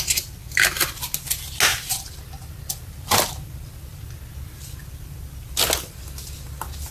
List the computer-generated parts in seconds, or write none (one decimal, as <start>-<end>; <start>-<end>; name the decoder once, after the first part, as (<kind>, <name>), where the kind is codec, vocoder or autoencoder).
1.7-2.7 (vocoder, BigVGAN v2); 4.8-5.4